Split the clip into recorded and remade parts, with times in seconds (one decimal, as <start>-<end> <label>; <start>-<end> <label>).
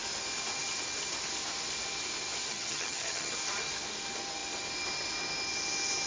0.0-2.5 recorded; 2.5-3.3 remade; 3.3-6.1 recorded